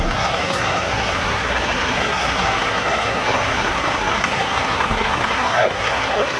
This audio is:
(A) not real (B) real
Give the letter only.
A